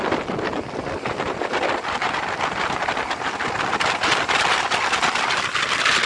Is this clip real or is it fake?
real